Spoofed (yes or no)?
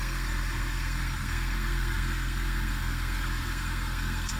yes